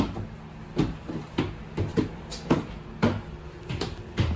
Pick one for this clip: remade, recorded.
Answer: recorded